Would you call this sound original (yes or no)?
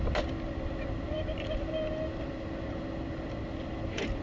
yes